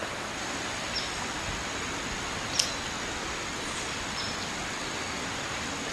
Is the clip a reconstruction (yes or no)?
no